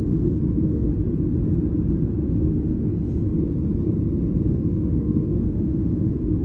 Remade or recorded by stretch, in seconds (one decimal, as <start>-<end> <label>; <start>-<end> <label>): 0.0-0.9 remade; 0.9-2.3 recorded; 2.3-2.9 remade; 2.9-4.5 recorded; 4.5-6.4 remade